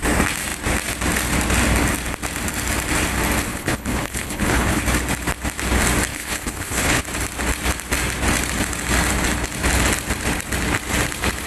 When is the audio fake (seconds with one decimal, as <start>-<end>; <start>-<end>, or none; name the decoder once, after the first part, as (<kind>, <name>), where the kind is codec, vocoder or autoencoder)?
3.5-4.8 (codec, HILCodec); 6.1-7.0